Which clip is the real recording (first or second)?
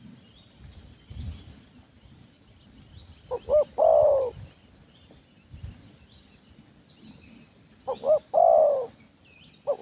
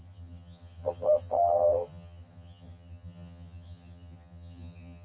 first